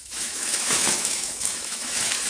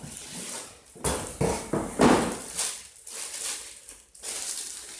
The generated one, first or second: first